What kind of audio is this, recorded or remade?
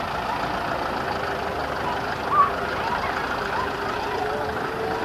recorded